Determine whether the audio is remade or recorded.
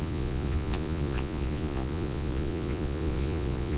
remade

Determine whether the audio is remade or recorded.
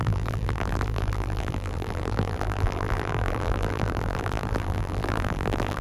remade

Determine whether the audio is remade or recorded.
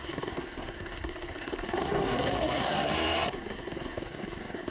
remade